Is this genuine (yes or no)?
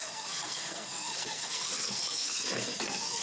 no